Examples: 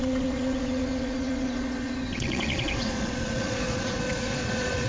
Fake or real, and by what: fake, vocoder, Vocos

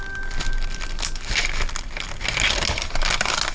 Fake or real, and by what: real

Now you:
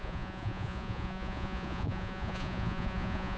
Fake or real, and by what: fake, vocoder, Vocos